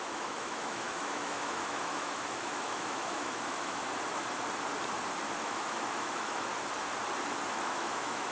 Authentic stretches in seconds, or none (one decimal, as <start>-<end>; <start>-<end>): 3.8-5.4; 6.5-7.5